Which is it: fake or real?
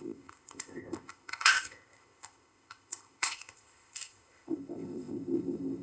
fake